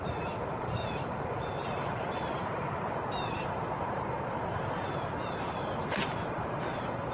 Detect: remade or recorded remade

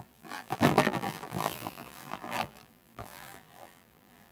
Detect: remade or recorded remade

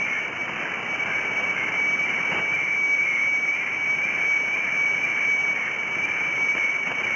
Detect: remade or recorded recorded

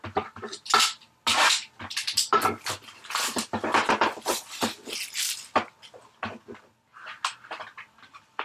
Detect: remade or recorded recorded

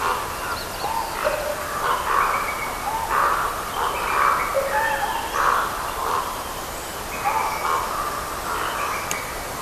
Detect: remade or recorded recorded